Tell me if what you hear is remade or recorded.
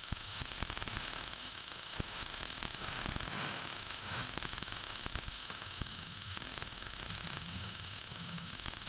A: remade